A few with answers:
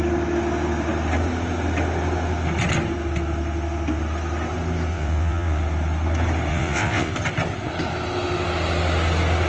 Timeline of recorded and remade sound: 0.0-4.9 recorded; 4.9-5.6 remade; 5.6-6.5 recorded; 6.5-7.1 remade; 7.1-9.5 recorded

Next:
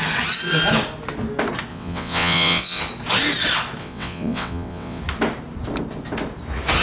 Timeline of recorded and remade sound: 0.0-1.7 recorded; 1.7-2.8 remade; 2.8-3.8 recorded; 3.8-5.0 remade; 5.0-6.8 recorded

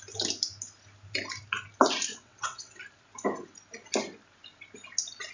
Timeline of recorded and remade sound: 0.0-2.1 recorded; 2.1-2.8 remade; 2.8-5.3 recorded